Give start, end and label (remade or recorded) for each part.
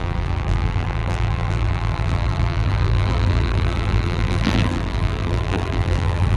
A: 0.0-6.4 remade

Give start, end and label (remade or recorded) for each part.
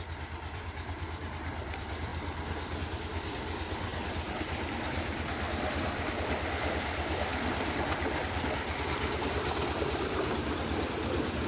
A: 0.0-2.1 remade; 2.1-2.8 recorded; 2.8-7.3 remade; 7.3-9.3 recorded; 9.3-11.5 remade